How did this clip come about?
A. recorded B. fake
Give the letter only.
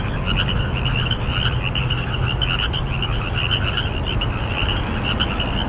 A